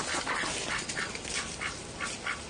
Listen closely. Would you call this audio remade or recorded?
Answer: recorded